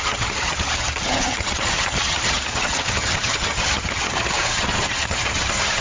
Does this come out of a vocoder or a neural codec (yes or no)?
yes